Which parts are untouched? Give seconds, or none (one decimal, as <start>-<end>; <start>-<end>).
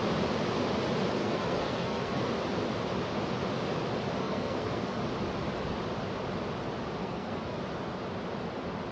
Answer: 0.0-1.2; 2.3-4.2; 5.0-7.0; 7.6-8.9